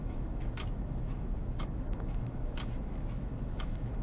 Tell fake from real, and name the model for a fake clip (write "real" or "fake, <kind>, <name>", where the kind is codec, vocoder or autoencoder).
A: fake, autoencoder, DAC-VAE